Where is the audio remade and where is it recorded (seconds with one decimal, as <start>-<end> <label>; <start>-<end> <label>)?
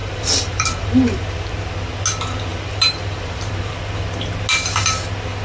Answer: 0.0-1.5 remade; 1.5-2.5 recorded; 2.5-3.7 remade; 3.7-5.4 recorded